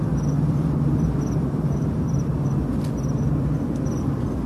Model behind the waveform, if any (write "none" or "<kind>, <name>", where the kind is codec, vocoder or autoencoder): none